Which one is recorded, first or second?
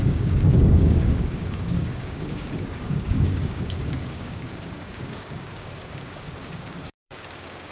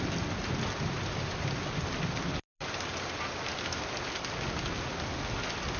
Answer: second